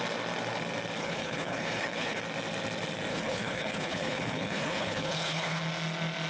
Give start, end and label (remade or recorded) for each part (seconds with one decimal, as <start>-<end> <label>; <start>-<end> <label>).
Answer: 0.0-1.0 recorded; 1.0-2.2 remade; 2.2-3.1 recorded; 3.1-5.6 remade; 5.6-6.3 recorded